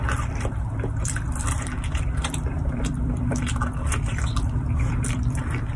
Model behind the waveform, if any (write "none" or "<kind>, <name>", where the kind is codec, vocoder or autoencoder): vocoder, BigVGAN v2